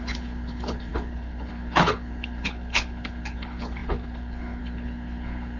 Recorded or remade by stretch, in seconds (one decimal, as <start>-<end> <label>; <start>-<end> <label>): 0.0-5.6 remade